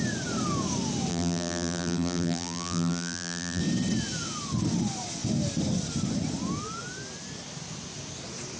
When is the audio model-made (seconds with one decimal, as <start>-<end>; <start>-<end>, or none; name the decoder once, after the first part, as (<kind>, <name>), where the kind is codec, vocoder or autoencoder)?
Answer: 1.1-3.6 (vocoder, BigVGAN v2)